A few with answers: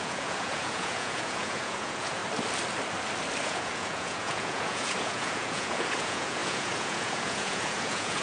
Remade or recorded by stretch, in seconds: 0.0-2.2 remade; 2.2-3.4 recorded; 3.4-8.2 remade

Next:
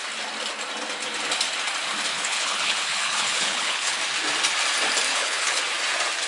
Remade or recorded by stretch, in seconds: 0.0-2.1 recorded; 2.1-4.0 remade; 4.0-5.1 recorded; 5.1-5.6 remade; 5.6-6.3 recorded